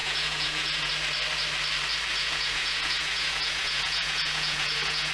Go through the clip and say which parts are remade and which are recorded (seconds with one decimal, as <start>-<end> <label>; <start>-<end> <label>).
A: 0.0-0.9 remade; 0.9-2.1 recorded; 2.1-5.1 remade